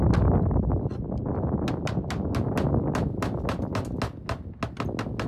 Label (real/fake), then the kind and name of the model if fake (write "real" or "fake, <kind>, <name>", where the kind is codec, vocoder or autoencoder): real